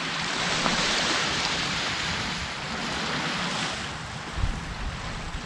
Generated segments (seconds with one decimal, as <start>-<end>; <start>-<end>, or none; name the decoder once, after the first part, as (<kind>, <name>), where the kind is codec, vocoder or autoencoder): 0.7-1.9 (vocoder, BigVGAN v2)